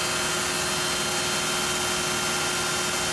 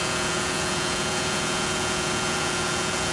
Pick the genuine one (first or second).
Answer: first